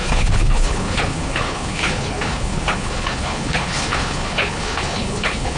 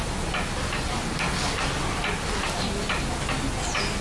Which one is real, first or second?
second